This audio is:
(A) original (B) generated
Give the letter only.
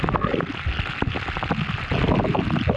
A